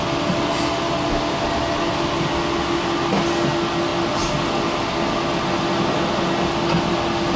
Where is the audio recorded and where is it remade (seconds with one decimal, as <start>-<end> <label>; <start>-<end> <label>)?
0.0-7.4 recorded